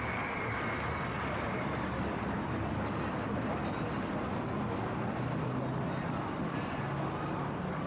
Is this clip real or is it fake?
real